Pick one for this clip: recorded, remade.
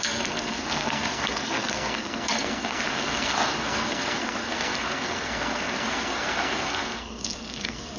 remade